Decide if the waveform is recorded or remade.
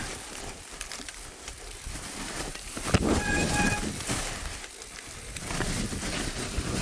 recorded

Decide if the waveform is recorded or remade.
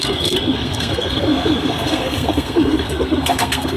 remade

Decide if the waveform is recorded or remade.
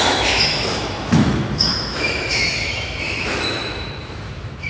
remade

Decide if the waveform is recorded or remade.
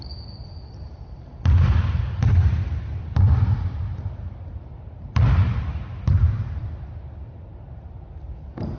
recorded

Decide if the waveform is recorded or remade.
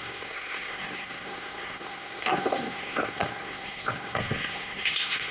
remade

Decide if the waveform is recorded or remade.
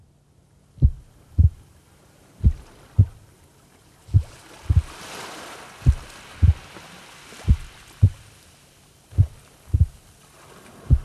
recorded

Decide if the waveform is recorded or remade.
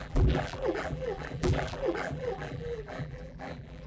remade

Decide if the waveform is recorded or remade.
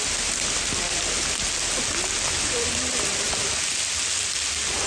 recorded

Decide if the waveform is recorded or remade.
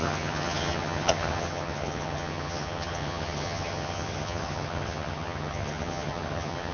remade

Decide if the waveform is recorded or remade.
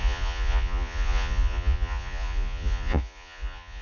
remade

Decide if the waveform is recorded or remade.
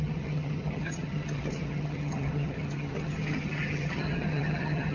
remade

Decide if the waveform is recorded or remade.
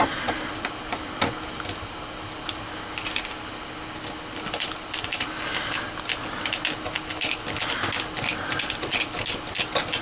recorded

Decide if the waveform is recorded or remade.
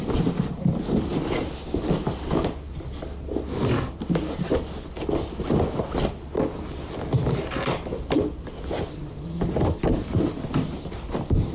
recorded